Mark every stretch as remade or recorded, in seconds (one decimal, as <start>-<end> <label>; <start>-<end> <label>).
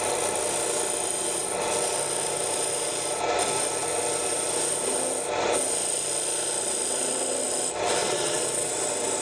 0.0-8.0 recorded; 8.0-8.7 remade; 8.7-9.2 recorded